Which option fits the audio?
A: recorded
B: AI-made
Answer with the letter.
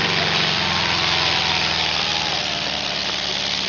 A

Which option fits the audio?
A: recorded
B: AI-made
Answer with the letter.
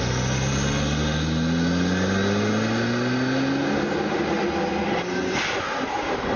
A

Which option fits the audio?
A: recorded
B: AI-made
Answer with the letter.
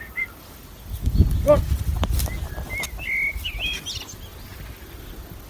A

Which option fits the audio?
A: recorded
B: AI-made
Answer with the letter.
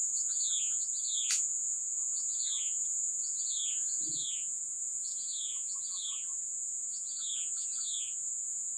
B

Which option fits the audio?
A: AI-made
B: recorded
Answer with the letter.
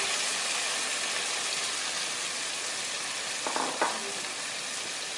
B